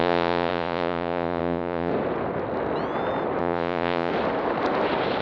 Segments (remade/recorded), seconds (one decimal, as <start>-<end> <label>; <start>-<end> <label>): 0.0-1.9 remade; 1.9-3.4 recorded; 3.4-4.1 remade; 4.1-5.2 recorded